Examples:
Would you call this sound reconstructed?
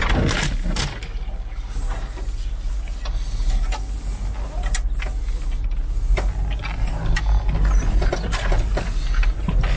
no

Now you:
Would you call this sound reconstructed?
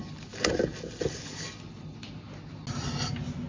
no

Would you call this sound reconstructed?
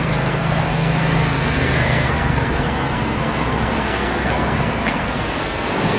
yes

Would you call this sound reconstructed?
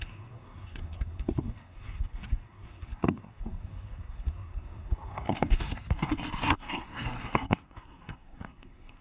yes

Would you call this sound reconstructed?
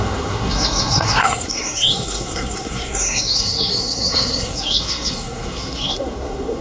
yes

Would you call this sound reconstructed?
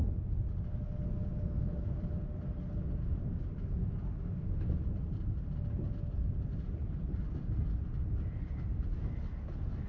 no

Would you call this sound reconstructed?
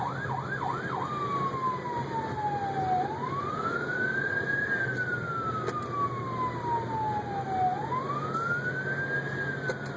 no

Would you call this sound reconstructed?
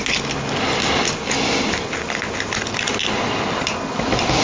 no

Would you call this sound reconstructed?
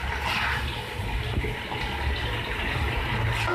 no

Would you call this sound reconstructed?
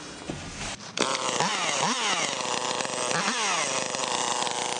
no